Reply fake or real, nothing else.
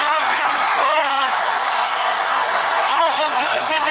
fake